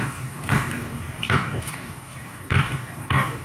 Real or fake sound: fake